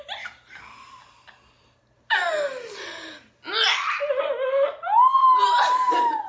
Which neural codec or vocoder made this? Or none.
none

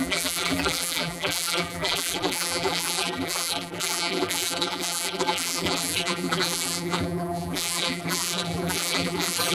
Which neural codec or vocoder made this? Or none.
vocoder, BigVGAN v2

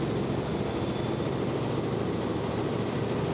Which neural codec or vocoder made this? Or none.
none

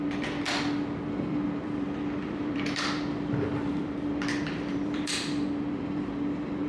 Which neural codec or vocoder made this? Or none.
vocoder, BigVGAN v2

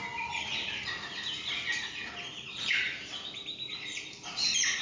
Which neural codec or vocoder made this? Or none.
vocoder, BigVGAN v2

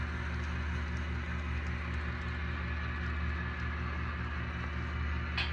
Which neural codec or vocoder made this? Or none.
none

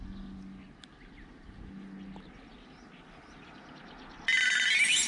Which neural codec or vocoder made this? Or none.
none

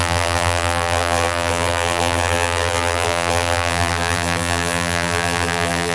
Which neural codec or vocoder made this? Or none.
vocoder, BigVGAN v2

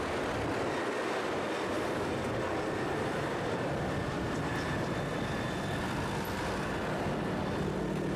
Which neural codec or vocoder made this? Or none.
none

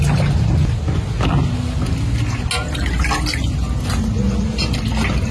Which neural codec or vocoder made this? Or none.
none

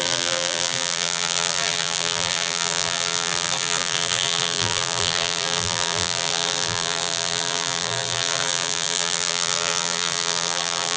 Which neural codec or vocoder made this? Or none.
vocoder, BigVGAN v2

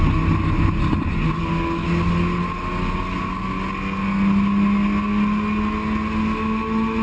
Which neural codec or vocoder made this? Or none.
none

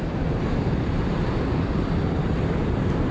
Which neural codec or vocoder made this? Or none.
vocoder, BigVGAN v2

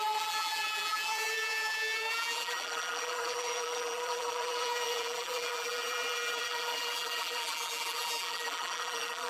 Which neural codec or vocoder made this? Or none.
vocoder, BigVGAN v2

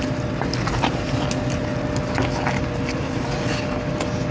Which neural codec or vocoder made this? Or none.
none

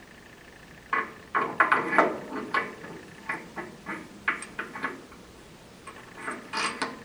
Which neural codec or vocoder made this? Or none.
none